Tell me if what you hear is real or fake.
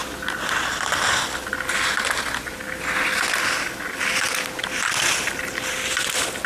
real